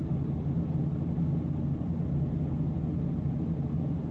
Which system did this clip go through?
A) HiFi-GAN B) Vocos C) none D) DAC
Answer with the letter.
C